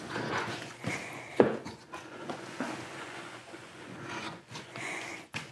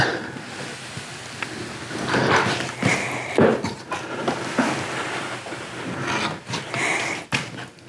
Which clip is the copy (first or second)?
first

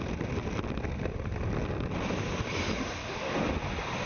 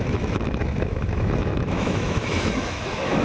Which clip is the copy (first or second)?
second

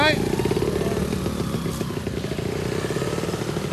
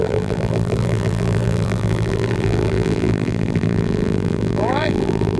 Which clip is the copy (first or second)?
second